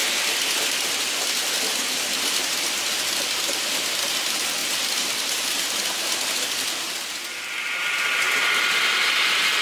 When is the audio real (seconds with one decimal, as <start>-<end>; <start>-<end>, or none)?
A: 0.0-9.6